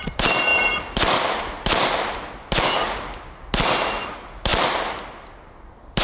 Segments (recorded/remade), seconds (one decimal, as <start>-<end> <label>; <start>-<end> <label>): 0.0-6.0 recorded